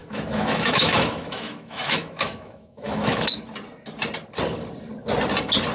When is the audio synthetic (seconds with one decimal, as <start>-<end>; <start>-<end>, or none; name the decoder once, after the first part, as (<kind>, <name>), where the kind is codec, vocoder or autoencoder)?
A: 0.0-3.4 (autoencoder, DAC-VAE)